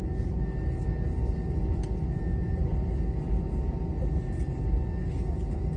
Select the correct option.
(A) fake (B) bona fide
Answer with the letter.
B